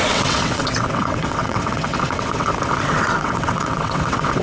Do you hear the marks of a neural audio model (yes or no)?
yes